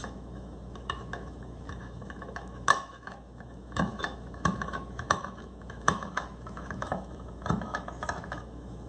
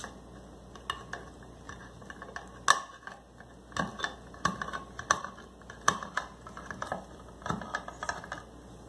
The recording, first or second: second